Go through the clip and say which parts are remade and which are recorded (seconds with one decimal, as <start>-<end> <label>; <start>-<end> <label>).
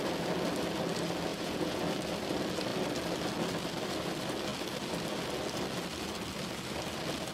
0.0-1.3 recorded; 1.3-1.8 remade; 1.8-7.3 recorded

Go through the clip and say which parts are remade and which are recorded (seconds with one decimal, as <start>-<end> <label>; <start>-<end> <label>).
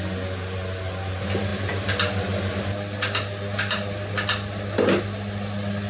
0.0-5.9 recorded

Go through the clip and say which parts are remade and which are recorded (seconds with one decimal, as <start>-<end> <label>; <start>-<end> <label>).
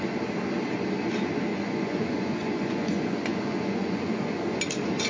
0.0-1.5 recorded; 1.5-4.6 remade; 4.6-5.1 recorded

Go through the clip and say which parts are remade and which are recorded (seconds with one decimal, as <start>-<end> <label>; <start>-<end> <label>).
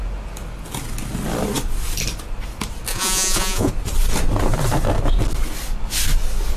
0.0-2.9 recorded; 2.9-3.7 remade; 3.7-6.6 recorded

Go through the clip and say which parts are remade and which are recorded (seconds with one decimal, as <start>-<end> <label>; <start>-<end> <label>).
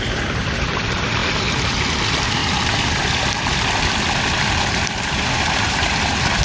0.0-6.4 recorded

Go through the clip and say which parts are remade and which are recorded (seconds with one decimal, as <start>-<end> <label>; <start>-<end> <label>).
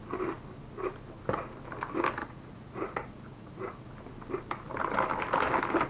0.0-2.2 recorded; 2.2-3.9 remade; 3.9-5.9 recorded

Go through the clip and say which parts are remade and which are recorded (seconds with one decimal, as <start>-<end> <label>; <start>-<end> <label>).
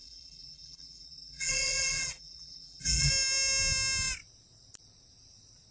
0.0-3.1 remade; 3.1-5.7 recorded